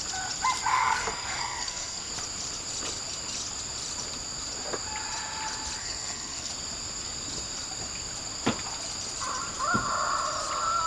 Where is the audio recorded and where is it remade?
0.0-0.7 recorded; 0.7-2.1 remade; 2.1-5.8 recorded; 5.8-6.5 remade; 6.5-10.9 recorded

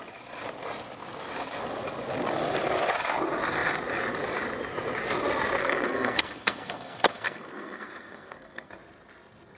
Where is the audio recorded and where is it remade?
0.0-5.6 recorded; 5.6-8.7 remade; 8.7-9.6 recorded

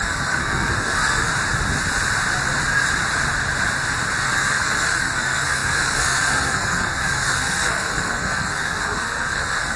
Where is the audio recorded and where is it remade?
0.0-1.3 remade; 1.3-4.2 recorded; 4.2-9.8 remade

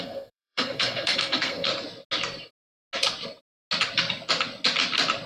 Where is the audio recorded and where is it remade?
0.0-1.7 remade; 1.7-5.3 recorded

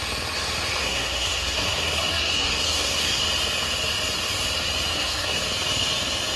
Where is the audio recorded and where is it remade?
0.0-0.8 recorded; 0.8-3.2 remade; 3.2-4.9 recorded; 4.9-5.4 remade; 5.4-6.4 recorded

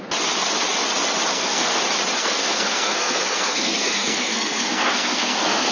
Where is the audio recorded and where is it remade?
0.0-1.3 recorded; 1.3-1.8 remade; 1.8-2.2 recorded; 2.2-5.7 remade

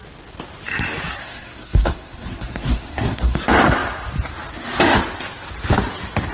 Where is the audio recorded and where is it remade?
0.0-1.2 recorded; 1.2-3.4 remade; 3.4-6.3 recorded

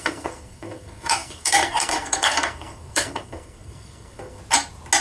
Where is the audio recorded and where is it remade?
0.0-4.4 remade; 4.4-5.0 recorded